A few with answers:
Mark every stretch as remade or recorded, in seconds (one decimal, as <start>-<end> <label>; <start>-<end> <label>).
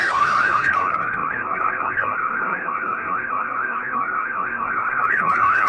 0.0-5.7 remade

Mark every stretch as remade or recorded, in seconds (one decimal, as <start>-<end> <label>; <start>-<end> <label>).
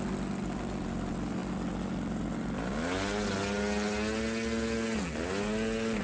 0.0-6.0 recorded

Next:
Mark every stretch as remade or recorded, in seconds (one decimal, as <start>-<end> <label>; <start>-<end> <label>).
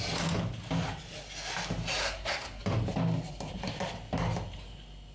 0.0-2.0 recorded; 2.0-2.6 remade; 2.6-5.1 recorded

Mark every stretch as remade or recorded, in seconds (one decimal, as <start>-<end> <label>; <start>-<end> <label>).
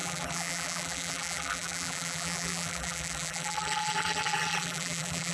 0.0-5.3 remade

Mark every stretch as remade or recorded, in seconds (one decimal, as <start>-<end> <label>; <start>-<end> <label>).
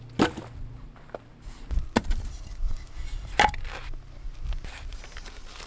0.0-5.7 recorded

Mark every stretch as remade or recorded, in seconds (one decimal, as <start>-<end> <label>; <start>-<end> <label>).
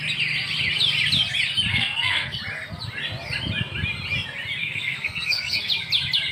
0.0-1.7 recorded; 1.7-2.4 remade; 2.4-4.6 recorded; 4.6-5.7 remade; 5.7-6.3 recorded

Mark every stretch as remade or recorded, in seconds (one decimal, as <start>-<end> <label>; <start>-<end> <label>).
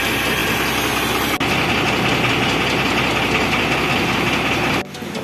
0.0-5.2 recorded